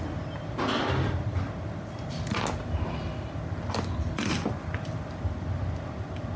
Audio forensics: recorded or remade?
recorded